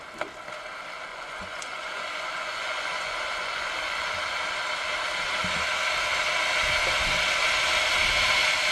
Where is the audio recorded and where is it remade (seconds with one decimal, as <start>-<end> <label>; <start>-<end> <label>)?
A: 0.0-1.1 recorded; 1.1-4.1 remade; 4.1-8.7 recorded